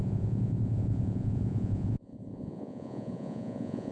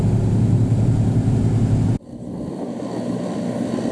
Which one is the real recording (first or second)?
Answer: second